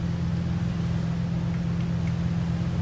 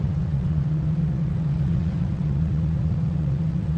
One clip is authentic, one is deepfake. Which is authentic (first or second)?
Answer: first